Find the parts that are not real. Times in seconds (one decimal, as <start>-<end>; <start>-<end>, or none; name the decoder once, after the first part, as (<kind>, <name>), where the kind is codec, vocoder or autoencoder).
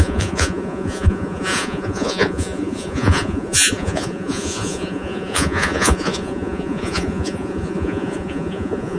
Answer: 0.0-9.0 (vocoder, Vocos)